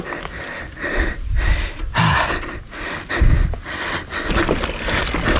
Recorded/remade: recorded